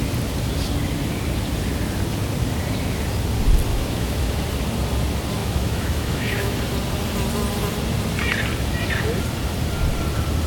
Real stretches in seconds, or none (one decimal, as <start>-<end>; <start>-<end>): 0.0-3.7; 4.4-5.4; 6.6-10.5